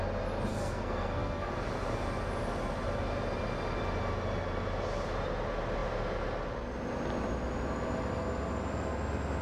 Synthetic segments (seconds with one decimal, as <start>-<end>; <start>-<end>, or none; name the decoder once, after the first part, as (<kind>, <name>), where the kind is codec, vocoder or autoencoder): 0.5-1.5 (codec, SNAC)